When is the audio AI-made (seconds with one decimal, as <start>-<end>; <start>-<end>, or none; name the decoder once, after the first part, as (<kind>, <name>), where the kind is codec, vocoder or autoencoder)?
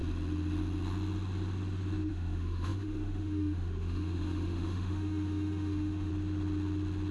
2.1-6.1 (autoencoder, DAC-VAE)